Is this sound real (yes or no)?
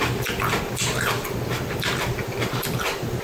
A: yes